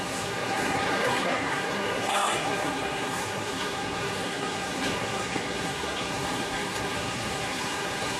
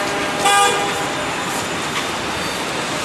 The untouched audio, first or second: second